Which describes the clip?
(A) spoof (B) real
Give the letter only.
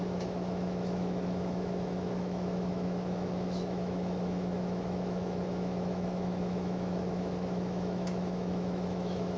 A